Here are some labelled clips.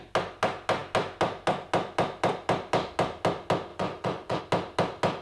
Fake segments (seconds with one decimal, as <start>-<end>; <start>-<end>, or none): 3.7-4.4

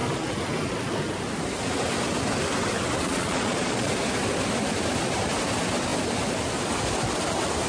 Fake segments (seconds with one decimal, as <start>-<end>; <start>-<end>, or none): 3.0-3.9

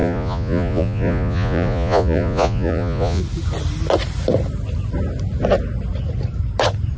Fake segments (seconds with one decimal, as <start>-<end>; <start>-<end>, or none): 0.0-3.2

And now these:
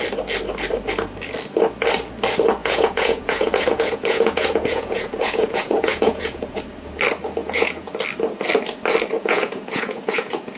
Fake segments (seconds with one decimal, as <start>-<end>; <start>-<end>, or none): 2.6-6.6; 7.4-7.9; 9.2-10.6